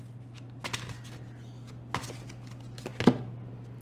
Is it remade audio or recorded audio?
recorded